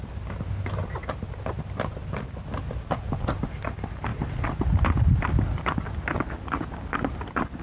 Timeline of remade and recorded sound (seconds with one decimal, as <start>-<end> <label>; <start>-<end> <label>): 0.0-7.6 recorded